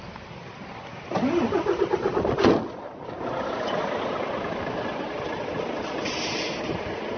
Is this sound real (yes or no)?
yes